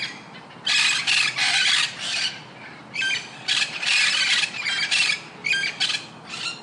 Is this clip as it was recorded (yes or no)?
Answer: no